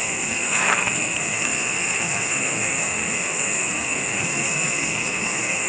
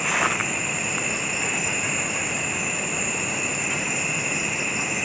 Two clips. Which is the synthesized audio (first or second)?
first